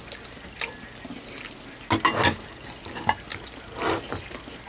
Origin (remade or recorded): recorded